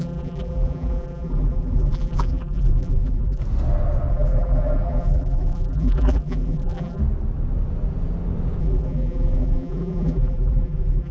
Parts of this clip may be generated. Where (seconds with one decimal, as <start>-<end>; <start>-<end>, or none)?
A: 0.0-3.4; 4.1-7.0; 8.6-11.1